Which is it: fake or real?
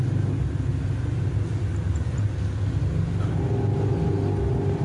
real